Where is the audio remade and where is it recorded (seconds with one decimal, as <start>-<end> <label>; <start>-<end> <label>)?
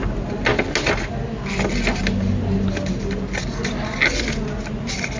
0.0-5.2 recorded